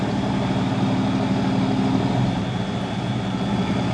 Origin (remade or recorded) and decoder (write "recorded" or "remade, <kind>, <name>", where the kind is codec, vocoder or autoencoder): recorded